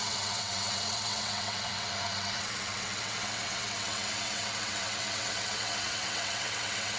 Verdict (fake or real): fake